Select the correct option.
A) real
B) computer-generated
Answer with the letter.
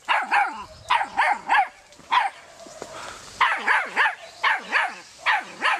A